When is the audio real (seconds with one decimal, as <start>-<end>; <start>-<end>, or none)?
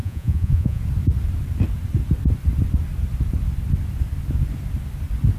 0.8-5.4